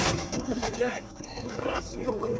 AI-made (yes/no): yes